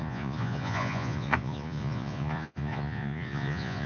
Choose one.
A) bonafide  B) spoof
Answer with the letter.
B